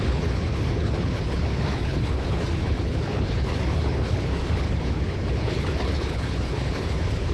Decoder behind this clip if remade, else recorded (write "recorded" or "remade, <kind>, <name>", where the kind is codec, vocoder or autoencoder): remade, codec, HILCodec